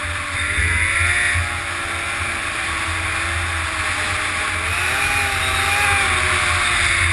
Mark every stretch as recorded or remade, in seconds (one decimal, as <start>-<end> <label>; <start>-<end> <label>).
0.0-0.6 remade; 0.6-2.4 recorded; 2.4-3.2 remade; 3.2-7.1 recorded